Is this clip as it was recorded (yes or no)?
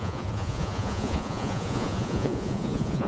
no